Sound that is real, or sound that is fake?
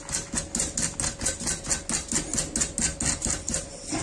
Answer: real